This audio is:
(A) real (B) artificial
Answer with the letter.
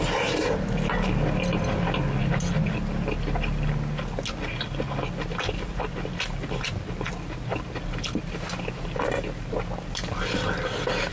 A